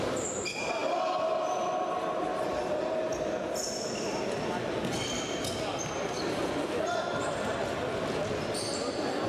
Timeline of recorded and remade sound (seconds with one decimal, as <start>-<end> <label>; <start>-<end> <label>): 0.0-9.3 recorded